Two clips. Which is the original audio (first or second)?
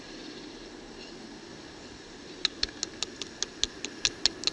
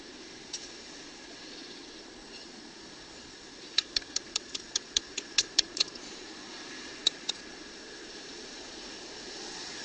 first